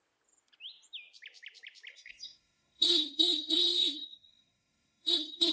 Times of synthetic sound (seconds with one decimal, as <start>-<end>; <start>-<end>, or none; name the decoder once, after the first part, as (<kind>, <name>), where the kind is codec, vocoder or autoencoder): 1.9-5.5 (codec, SNAC)